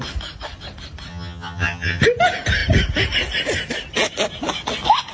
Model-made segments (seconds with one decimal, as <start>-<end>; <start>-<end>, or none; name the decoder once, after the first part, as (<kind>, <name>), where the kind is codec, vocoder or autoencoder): 1.1-2.0 (vocoder, HiFi-GAN)